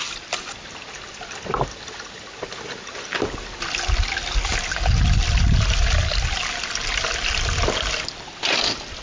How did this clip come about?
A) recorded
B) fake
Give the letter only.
A